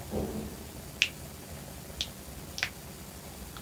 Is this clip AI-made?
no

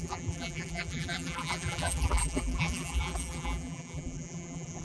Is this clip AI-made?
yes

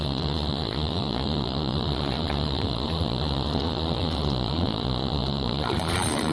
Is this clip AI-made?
yes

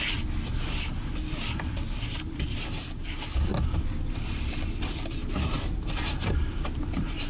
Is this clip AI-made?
no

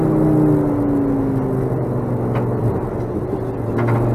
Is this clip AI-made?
no